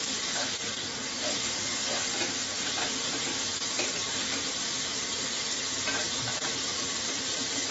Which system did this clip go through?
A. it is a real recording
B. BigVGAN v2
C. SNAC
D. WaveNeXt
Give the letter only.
A